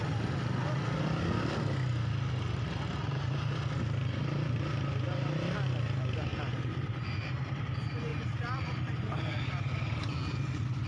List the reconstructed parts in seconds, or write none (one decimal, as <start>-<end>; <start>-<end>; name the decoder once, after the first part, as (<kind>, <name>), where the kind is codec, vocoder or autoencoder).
6.3-7.0 (vocoder, BigVGAN v2)